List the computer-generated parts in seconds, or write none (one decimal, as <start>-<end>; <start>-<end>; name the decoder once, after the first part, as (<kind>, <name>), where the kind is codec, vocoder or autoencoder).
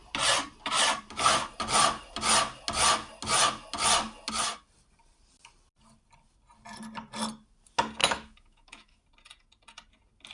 8.0-9.0 (autoencoder, DAC-VAE)